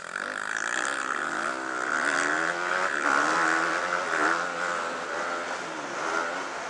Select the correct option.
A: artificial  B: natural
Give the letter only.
B